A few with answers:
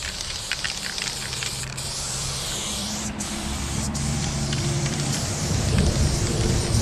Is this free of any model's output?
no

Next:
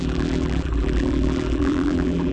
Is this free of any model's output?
no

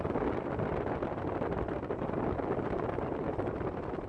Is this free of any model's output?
yes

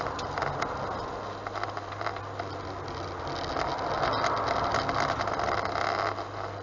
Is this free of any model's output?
yes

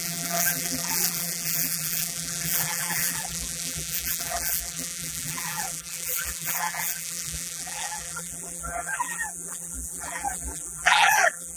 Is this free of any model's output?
no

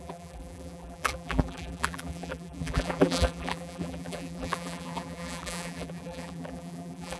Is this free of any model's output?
no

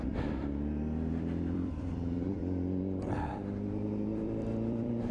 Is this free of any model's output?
no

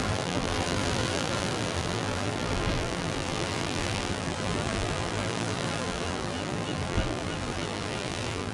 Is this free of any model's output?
no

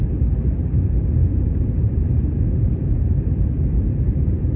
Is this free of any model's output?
no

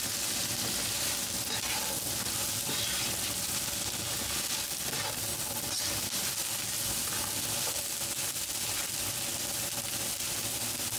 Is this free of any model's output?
yes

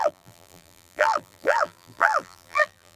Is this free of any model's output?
no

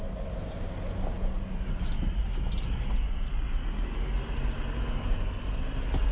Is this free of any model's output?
yes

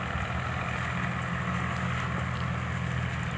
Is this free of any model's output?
yes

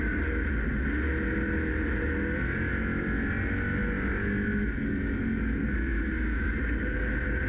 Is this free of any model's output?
yes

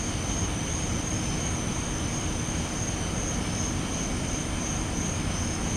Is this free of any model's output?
yes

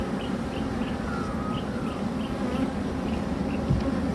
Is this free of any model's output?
yes